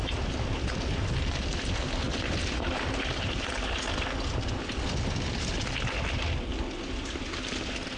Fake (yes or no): no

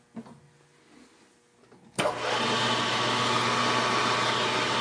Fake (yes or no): no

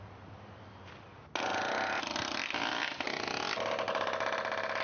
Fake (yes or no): no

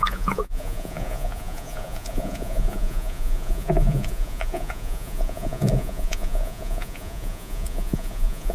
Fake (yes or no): yes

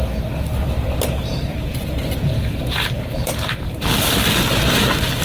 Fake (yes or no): no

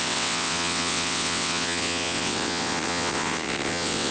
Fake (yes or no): yes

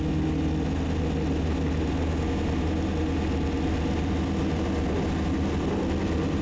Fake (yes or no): no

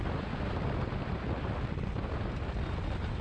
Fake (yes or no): no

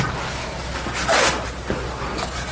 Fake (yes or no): no